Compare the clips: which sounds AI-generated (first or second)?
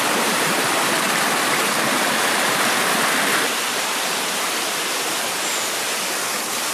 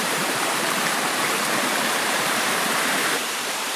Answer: second